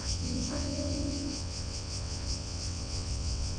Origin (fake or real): fake